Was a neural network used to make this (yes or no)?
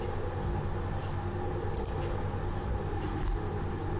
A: no